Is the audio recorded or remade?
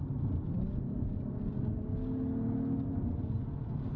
recorded